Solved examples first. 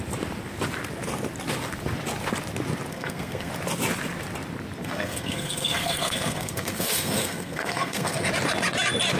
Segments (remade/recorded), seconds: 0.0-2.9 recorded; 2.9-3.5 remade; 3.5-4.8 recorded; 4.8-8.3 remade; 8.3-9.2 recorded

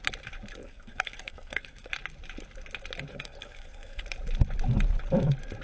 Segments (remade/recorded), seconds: 0.0-0.6 recorded; 0.6-1.9 remade; 1.9-3.1 recorded; 3.1-4.0 remade; 4.0-5.6 recorded

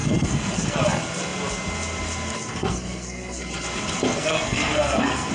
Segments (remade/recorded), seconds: 0.0-0.8 remade; 0.8-2.6 recorded; 2.6-3.4 remade; 3.4-4.1 recorded; 4.1-5.3 remade

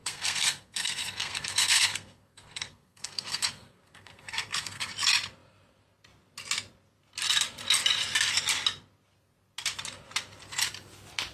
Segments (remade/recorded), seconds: 0.0-4.9 remade; 4.9-11.3 recorded

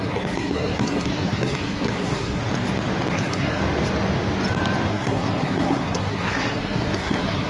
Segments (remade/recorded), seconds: 0.0-2.4 remade; 2.4-3.1 recorded; 3.1-3.6 remade; 3.6-4.9 recorded; 4.9-7.5 remade

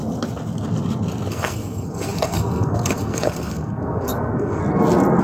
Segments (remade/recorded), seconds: 0.0-1.3 recorded; 1.3-4.6 remade; 4.6-5.2 recorded

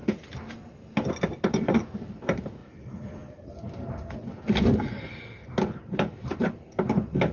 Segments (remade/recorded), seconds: 0.0-7.3 recorded